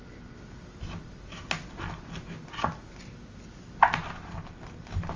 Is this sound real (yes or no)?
yes